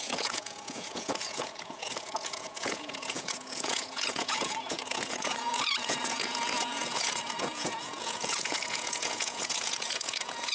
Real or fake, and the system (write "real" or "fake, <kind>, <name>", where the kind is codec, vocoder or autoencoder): fake, vocoder, Vocos